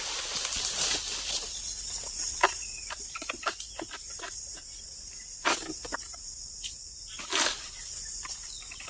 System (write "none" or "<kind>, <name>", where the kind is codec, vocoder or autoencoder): none